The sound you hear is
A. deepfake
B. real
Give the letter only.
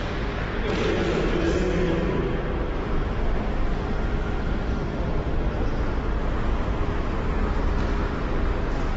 B